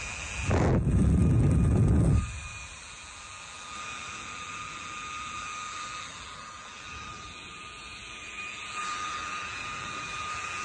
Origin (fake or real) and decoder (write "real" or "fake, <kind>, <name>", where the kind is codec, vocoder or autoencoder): fake, vocoder, BigVGAN v2